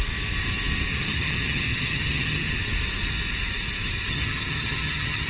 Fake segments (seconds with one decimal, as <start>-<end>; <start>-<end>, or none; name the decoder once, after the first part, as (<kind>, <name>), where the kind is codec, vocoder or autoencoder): 0.9-2.5 (vocoder, HiFi-GAN); 4.1-5.3

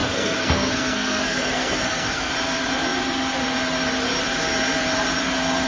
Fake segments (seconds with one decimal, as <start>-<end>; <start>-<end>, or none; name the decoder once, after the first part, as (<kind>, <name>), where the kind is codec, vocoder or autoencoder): 0.0-2.3 (codec, SNAC)

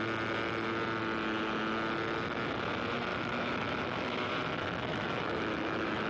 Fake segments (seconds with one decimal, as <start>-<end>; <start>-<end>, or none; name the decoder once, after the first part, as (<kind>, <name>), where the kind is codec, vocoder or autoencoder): 3.1-4.3 (autoencoder, DAC-VAE); 4.9-6.1

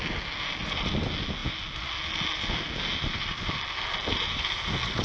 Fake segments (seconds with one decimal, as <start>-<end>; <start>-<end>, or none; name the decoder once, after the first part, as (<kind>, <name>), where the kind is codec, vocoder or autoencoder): none

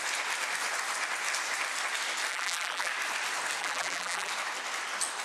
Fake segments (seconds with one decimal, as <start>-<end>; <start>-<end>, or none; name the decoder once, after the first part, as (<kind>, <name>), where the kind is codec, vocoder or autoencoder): 2.3-2.9 (vocoder, BigVGAN v2); 3.6-4.3

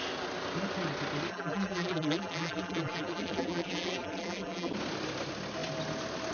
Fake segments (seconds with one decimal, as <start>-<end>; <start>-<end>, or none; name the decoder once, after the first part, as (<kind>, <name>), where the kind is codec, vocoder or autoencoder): 1.3-4.7 (vocoder, BigVGAN v2)

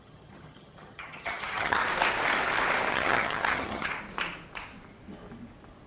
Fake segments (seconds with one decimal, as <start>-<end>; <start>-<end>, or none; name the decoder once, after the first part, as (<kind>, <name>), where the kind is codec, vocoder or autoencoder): 0.0-1.8 (vocoder, HiFi-GAN); 2.9-3.9